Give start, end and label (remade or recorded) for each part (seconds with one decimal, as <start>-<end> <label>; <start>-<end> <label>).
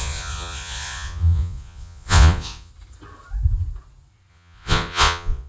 0.0-2.7 remade; 2.7-4.3 recorded; 4.3-5.5 remade